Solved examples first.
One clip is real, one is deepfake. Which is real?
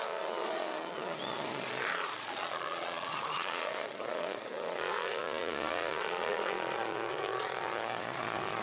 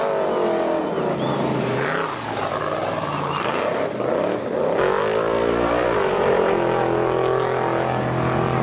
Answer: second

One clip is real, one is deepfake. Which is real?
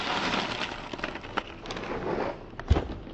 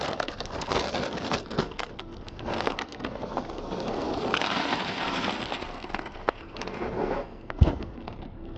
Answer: first